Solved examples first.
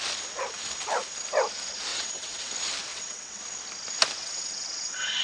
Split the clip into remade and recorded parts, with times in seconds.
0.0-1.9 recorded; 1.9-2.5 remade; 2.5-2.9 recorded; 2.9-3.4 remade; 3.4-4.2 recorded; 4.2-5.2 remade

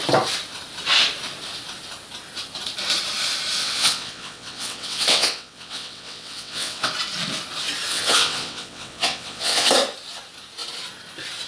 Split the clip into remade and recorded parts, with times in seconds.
0.0-3.6 recorded; 3.6-6.9 remade; 6.9-7.9 recorded; 7.9-9.7 remade; 9.7-11.5 recorded